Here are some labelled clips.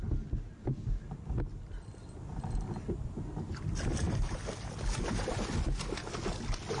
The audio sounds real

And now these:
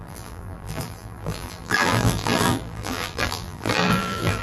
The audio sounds fake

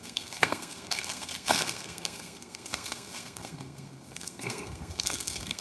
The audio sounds fake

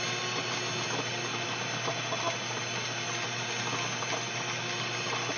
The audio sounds real